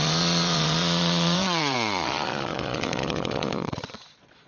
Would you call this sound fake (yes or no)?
yes